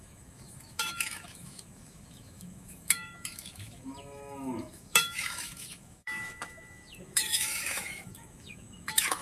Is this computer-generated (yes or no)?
yes